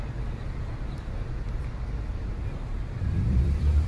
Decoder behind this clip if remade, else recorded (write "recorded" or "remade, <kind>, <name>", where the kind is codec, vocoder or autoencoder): remade, vocoder, BigVGAN v2